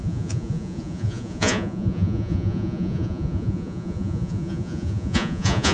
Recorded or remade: remade